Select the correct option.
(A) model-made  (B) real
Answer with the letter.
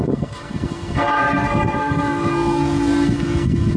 A